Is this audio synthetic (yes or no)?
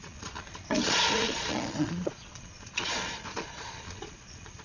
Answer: yes